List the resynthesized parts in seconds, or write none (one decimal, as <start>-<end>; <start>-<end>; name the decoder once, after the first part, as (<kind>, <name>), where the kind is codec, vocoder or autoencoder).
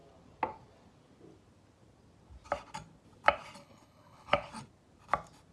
3.6-4.5 (codec, HILCodec)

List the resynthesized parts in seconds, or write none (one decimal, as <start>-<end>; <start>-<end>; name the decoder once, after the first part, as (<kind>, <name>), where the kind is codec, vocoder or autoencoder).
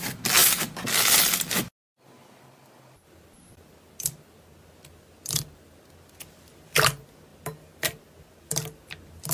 none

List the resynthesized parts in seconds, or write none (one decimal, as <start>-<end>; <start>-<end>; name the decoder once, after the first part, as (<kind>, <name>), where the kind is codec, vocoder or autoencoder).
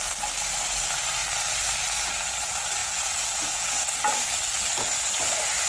2.8-4.2 (vocoder, Vocos)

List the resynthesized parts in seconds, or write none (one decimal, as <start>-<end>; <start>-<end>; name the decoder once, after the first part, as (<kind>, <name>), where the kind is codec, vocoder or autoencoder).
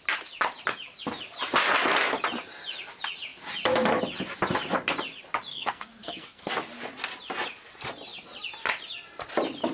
5.5-6.5 (codec, SNAC)